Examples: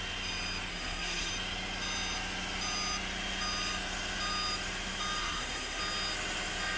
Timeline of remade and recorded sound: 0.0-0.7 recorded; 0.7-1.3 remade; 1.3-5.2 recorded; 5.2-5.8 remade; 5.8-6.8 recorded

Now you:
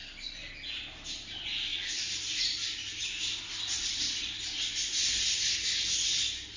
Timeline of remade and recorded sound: 0.0-0.5 remade; 0.5-1.7 recorded; 1.7-4.3 remade; 4.3-6.6 recorded

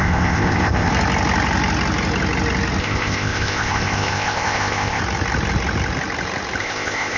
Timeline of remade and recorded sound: 0.0-0.9 remade; 0.9-2.8 recorded; 2.8-5.0 remade; 5.0-6.6 recorded; 6.6-7.2 remade

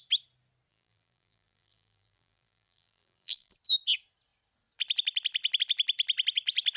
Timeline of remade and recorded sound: 0.0-0.7 recorded; 0.7-3.5 remade; 3.5-6.8 recorded

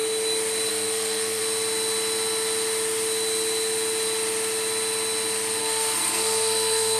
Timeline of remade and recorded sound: 0.0-0.7 recorded; 0.7-1.4 remade; 1.4-5.6 recorded; 5.6-7.0 remade

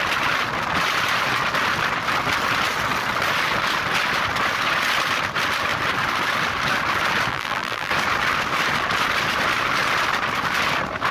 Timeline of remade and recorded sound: 0.0-7.3 recorded; 7.3-7.9 remade; 7.9-11.1 recorded

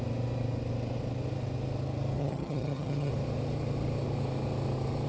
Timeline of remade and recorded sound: 0.0-2.2 recorded; 2.2-3.1 remade; 3.1-5.1 recorded